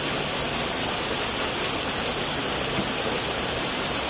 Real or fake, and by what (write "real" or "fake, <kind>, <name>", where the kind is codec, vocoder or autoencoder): real